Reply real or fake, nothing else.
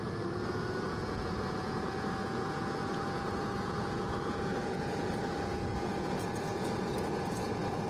fake